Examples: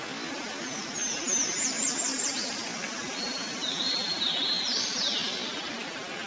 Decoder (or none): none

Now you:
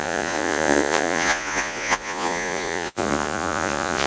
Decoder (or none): vocoder, Vocos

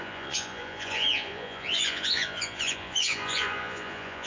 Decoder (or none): vocoder, Vocos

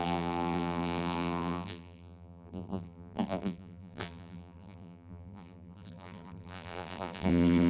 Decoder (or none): vocoder, BigVGAN v2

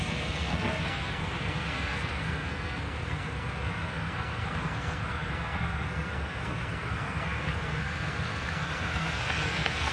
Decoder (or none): codec, SNAC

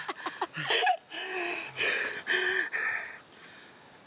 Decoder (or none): none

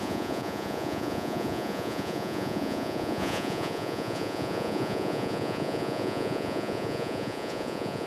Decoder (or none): vocoder, Vocos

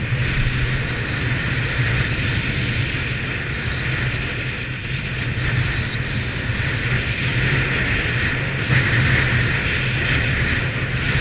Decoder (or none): none